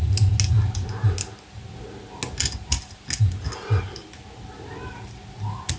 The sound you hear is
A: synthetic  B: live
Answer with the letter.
B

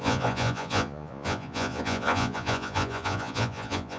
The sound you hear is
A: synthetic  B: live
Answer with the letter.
A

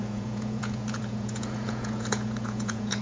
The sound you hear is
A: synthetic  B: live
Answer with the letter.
A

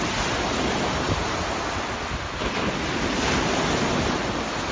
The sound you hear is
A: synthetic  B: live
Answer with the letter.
B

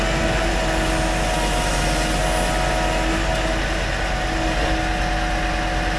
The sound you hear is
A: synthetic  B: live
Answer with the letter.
B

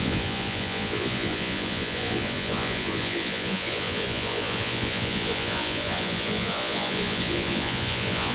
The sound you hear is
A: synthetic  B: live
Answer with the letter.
A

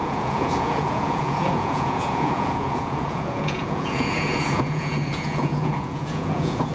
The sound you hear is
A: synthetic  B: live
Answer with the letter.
A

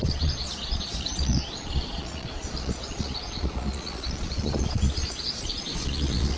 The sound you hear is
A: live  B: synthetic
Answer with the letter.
B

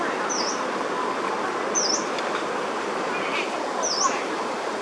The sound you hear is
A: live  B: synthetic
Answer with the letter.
A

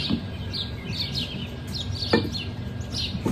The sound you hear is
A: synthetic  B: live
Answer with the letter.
B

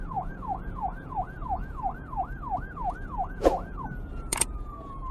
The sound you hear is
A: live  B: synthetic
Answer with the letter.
B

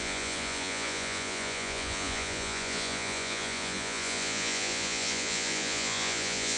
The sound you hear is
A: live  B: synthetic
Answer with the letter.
B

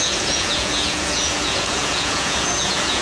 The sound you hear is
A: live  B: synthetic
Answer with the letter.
B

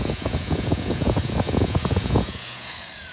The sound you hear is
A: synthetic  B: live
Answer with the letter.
A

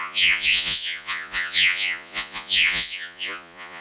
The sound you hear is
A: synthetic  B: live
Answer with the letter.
A